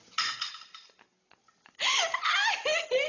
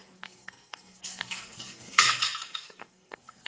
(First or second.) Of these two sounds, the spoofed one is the second